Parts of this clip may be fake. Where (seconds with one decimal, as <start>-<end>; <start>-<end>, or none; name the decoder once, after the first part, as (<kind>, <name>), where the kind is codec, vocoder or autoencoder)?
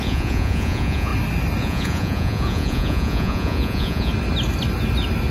0.0-1.1 (vocoder, Vocos); 1.6-4.1